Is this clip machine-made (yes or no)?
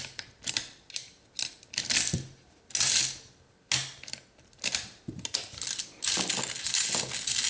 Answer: no